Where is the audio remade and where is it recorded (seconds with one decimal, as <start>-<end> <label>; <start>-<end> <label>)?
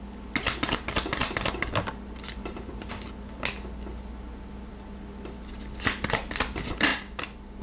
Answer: 0.0-7.6 recorded